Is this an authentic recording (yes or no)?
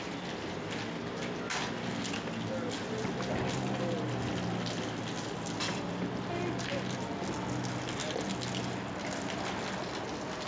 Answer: yes